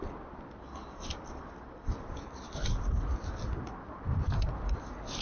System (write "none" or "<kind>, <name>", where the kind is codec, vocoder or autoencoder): none